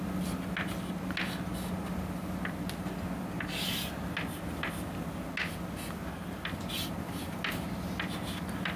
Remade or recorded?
recorded